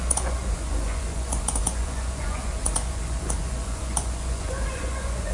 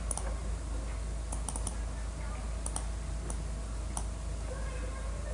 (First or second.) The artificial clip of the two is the first